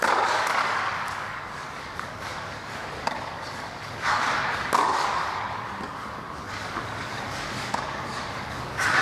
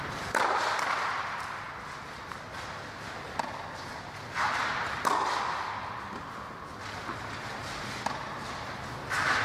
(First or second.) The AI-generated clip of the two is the first